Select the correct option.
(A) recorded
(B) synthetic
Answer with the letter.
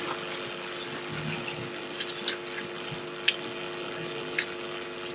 A